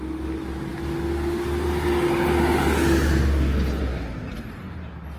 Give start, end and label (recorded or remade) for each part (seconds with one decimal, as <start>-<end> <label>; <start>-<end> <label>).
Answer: 0.0-5.2 recorded